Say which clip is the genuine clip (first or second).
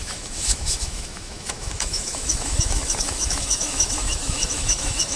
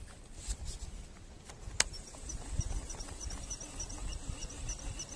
second